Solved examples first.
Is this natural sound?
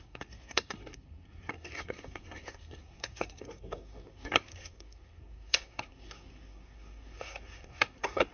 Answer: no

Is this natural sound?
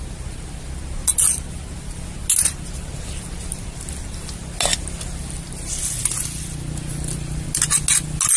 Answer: yes